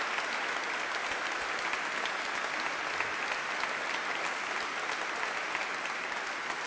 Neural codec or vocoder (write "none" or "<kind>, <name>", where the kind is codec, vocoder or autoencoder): none